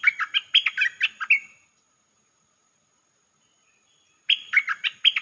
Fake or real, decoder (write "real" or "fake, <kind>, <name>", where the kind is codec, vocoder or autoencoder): real